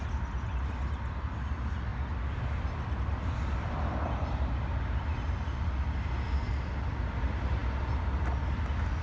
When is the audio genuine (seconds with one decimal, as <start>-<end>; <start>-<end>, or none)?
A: 0.0-9.0